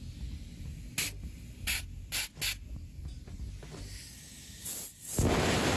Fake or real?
real